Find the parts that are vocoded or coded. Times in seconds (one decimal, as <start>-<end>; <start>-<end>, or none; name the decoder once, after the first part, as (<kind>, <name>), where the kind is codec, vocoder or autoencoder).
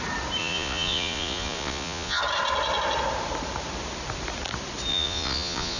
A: 0.4-2.2 (vocoder, Vocos); 4.9-5.8